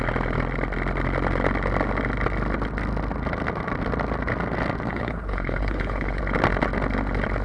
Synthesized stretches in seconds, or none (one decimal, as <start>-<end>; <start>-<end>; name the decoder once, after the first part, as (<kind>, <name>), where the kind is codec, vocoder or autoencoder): 4.9-6.2 (codec, HILCodec)